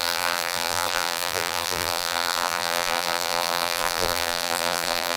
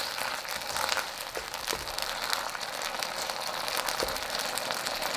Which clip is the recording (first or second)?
second